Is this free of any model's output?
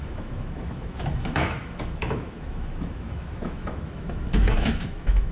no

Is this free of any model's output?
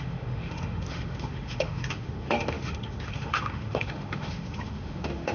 no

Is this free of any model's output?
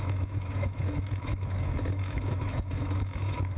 no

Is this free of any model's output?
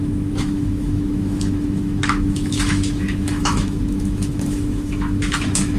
no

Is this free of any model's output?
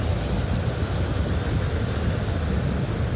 yes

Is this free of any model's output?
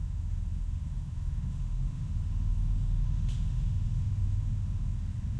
no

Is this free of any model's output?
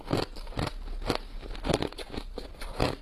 yes